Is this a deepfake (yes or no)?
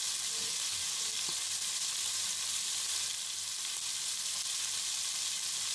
no